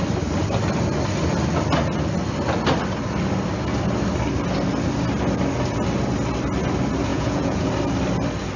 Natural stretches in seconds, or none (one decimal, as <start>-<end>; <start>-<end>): 0.0-7.1; 7.7-8.6